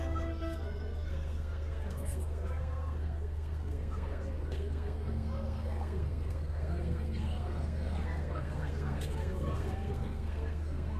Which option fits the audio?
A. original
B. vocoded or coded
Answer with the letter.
B